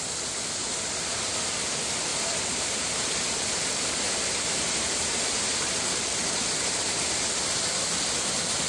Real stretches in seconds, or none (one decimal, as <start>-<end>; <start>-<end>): 0.0-0.6; 1.2-2.1; 6.2-8.7